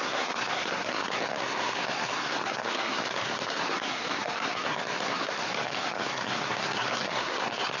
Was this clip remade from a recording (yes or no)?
yes